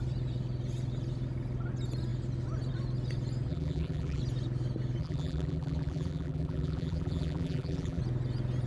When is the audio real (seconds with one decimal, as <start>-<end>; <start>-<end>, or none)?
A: 0.0-3.5; 4.2-5.0; 8.0-8.7